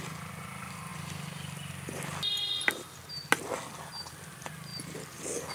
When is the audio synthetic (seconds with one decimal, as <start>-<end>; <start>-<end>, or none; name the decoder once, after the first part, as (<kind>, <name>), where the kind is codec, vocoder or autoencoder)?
none